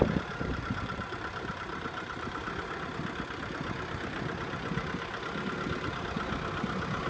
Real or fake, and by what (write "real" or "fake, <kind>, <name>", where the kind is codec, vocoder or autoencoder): real